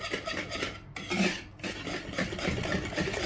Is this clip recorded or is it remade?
recorded